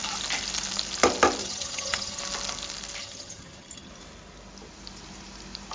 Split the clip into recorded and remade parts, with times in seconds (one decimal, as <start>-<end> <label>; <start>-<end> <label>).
0.0-1.4 recorded; 1.4-2.2 remade; 2.2-3.0 recorded; 3.0-3.9 remade; 3.9-5.7 recorded